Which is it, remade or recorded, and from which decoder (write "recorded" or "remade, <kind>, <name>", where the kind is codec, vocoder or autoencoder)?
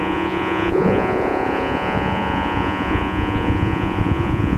remade, vocoder, Vocos